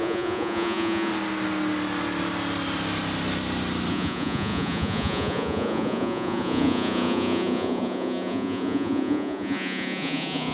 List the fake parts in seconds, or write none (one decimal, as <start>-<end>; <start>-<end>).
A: 0.0-1.1; 3.9-10.5